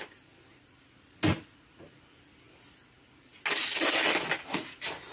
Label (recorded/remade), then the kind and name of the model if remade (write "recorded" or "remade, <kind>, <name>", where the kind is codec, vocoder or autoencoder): recorded